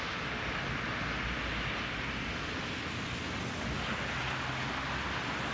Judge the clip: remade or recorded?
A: recorded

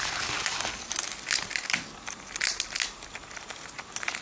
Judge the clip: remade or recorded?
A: recorded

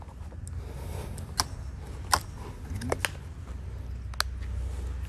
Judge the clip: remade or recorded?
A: recorded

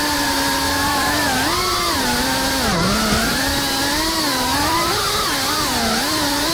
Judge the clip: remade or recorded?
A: recorded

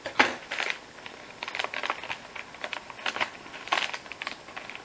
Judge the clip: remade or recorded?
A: recorded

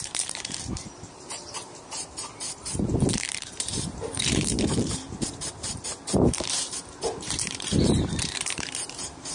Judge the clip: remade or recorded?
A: remade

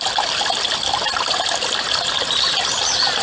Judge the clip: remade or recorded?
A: recorded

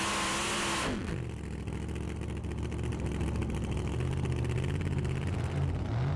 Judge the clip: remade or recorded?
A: recorded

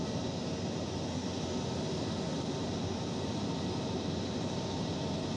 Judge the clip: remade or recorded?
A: remade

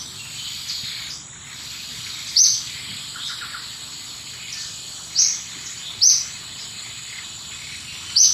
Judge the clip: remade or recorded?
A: recorded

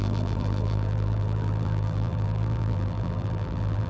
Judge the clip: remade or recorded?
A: remade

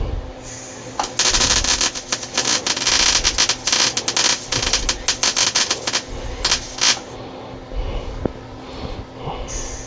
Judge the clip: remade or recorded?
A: recorded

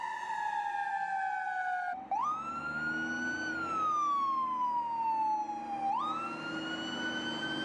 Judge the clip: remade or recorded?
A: recorded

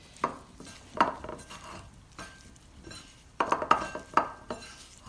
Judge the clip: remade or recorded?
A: recorded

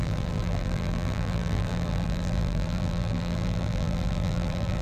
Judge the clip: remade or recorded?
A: remade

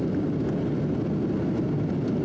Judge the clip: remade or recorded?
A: recorded